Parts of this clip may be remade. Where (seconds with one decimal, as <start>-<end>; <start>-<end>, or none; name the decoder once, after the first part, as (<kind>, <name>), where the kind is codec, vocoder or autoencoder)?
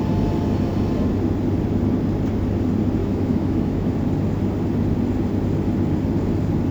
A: 3.0-3.9 (autoencoder, DAC-VAE)